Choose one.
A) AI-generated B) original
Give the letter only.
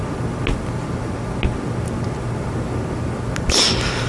B